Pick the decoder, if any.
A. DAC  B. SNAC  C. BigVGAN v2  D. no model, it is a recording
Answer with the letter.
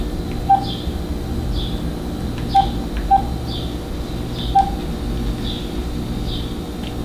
D